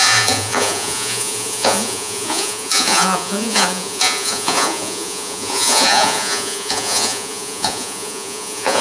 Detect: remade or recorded remade